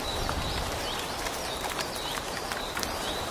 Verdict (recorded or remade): remade